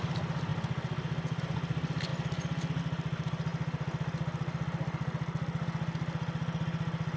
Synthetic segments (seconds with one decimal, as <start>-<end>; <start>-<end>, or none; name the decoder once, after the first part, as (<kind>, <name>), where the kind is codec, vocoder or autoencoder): none